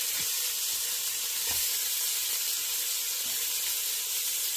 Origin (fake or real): real